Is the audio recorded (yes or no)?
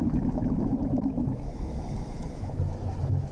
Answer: no